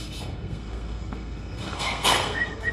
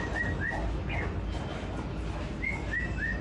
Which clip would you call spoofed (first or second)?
first